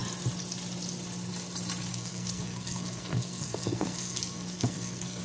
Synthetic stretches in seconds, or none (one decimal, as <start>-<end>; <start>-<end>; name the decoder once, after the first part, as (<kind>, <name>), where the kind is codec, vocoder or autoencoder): 1.9-5.2 (codec, SNAC)